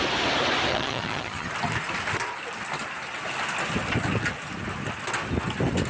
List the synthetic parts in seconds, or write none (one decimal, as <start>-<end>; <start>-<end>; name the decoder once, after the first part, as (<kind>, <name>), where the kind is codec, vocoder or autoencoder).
0.7-1.5 (vocoder, HiFi-GAN)